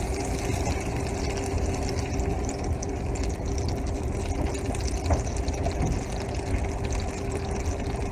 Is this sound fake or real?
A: real